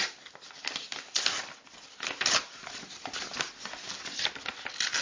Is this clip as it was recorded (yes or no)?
yes